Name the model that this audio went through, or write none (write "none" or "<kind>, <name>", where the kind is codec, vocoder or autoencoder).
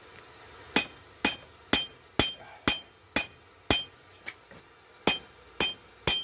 none